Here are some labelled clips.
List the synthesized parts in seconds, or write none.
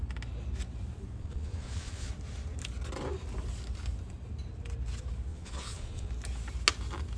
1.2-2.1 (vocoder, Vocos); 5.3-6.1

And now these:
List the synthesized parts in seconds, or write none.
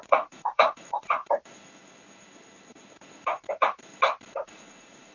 0.0-1.2 (vocoder, Vocos); 4.3-5.1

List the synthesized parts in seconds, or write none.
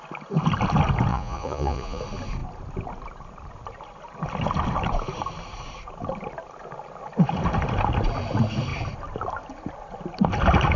1.1-2.0 (vocoder, Vocos)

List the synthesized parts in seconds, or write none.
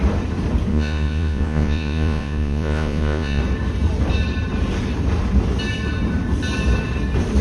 0.7-3.4 (vocoder, Vocos)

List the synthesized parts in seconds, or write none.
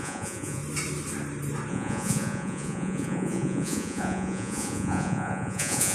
0.0-0.6 (vocoder, Vocos); 1.7-5.9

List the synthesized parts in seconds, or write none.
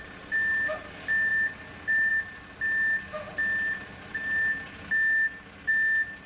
none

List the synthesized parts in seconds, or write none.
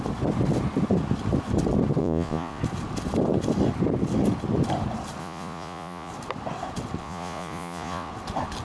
2.0-2.6 (vocoder, Vocos); 5.2-6.1; 7.0-8.1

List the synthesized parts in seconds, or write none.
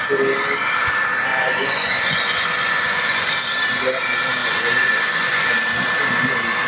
1.3-3.3 (vocoder, Vocos); 4.4-5.5